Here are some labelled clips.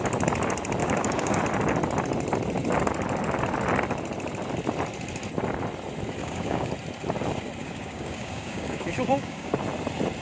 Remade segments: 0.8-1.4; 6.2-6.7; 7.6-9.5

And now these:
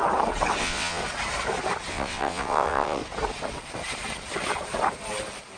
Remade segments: 0.6-1.0; 1.9-3.0

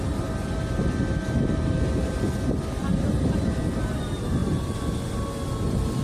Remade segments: none

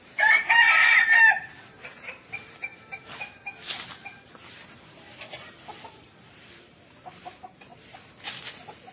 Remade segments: 0.0-0.8; 1.3-2.7; 6.0-7.7

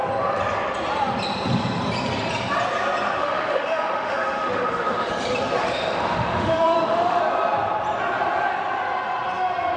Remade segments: 3.2-5.1; 5.6-7.2